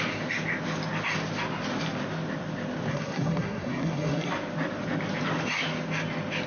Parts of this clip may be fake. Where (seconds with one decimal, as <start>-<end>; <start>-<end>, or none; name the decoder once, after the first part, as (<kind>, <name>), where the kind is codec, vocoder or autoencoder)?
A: 2.9-4.3 (codec, SNAC)